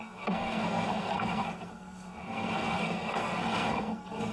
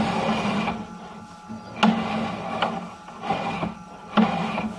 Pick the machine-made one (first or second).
first